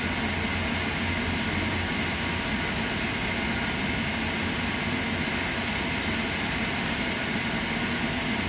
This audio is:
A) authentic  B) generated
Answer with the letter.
A